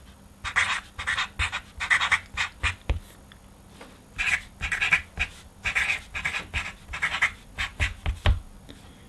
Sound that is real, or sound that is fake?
real